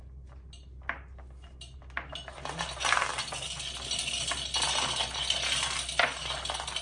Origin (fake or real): real